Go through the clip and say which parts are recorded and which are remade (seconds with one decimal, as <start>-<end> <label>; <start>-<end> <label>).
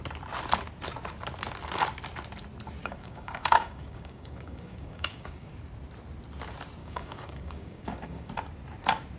0.0-2.8 recorded; 2.8-5.5 remade; 5.5-6.8 recorded; 6.8-8.3 remade; 8.3-9.2 recorded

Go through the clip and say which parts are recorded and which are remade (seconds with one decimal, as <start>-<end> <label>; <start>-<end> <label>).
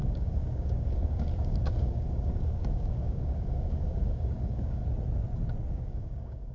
0.0-4.8 remade; 4.8-5.7 recorded; 5.7-6.5 remade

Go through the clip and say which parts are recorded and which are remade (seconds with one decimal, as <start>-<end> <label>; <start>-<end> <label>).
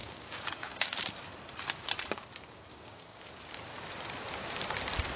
0.0-1.1 remade; 1.1-2.7 recorded; 2.7-3.3 remade; 3.3-5.2 recorded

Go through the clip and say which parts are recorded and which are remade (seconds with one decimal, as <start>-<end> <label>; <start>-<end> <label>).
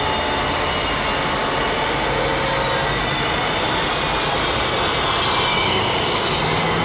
0.0-5.5 recorded; 5.5-6.2 remade; 6.2-6.8 recorded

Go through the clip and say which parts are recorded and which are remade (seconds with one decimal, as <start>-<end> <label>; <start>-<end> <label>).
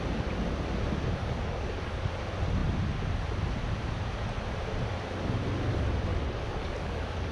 0.0-1.2 recorded; 1.2-2.1 remade; 2.1-6.1 recorded; 6.1-7.3 remade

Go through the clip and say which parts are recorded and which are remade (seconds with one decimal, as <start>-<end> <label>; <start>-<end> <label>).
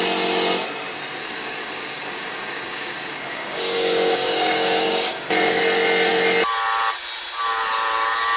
0.0-1.2 recorded; 1.2-5.6 remade; 5.6-8.4 recorded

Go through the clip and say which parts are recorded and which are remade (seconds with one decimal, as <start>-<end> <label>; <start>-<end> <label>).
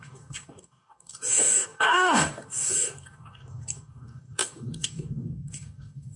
0.0-6.2 remade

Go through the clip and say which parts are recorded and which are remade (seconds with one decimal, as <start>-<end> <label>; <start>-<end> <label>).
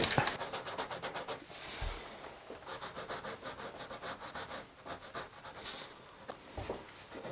0.0-7.3 recorded